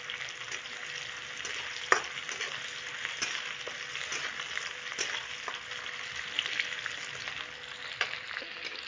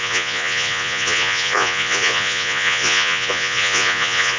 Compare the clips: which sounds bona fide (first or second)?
first